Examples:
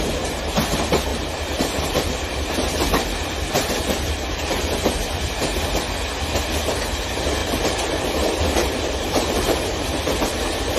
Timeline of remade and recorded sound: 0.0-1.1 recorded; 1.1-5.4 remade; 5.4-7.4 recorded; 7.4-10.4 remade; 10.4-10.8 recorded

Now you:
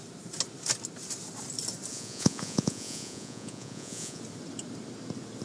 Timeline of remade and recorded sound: 0.0-1.9 recorded; 1.9-4.2 remade; 4.2-5.4 recorded

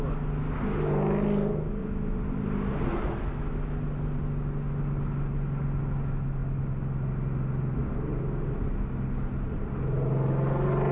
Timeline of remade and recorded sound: 0.0-1.8 recorded; 1.8-2.9 remade; 2.9-10.9 recorded